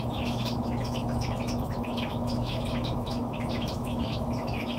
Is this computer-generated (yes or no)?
yes